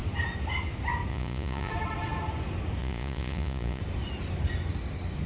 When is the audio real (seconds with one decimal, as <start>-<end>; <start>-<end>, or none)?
0.0-1.1; 1.7-2.8; 3.8-5.3